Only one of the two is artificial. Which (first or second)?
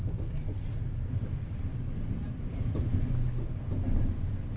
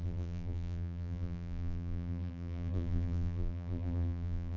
second